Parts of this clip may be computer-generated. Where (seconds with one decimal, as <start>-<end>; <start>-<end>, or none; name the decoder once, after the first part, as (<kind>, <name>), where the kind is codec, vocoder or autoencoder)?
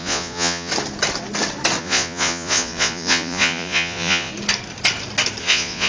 0.0-0.7 (vocoder, Vocos); 1.8-4.3; 5.4-5.9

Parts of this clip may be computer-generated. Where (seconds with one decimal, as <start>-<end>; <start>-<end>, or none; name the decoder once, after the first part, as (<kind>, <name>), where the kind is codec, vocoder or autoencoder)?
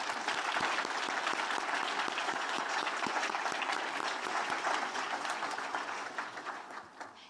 2.2-3.3 (vocoder, Vocos); 4.0-6.8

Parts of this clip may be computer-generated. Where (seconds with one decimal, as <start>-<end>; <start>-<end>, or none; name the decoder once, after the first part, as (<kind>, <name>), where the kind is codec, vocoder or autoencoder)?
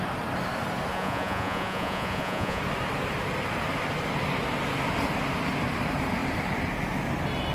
0.9-2.6 (vocoder, Vocos)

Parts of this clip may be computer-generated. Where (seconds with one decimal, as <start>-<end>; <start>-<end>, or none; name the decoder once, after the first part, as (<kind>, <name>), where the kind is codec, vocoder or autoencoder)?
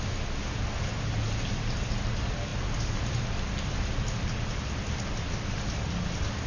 none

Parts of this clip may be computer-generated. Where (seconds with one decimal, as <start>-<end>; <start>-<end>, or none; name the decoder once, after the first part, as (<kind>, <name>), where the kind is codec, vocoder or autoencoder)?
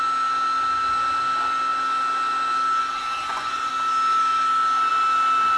3.2-3.7 (vocoder, Vocos)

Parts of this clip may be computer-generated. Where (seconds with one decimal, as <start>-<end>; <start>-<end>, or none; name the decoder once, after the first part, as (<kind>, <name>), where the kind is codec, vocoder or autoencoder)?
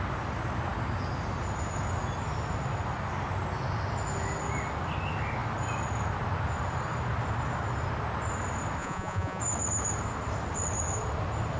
8.8-9.4 (vocoder, Vocos)